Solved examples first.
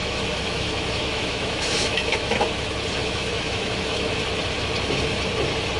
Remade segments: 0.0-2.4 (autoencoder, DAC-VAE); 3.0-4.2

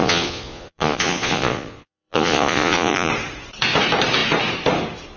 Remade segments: 0.0-3.1 (vocoder, Vocos)

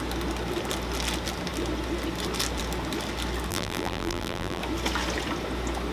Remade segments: 3.5-4.6 (vocoder, BigVGAN v2)

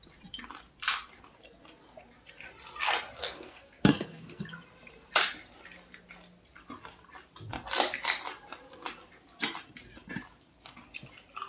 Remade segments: 3.2-4.5 (codec, SNAC)

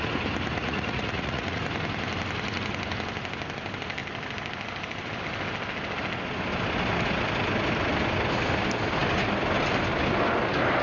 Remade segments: 0.6-1.6 (vocoder, Vocos)

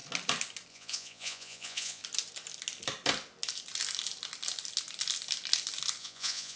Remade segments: 0.7-2.0 (vocoder, Vocos); 6.0-6.6

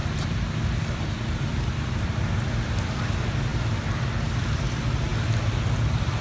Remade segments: 0.0-5.1 (vocoder, BigVGAN v2)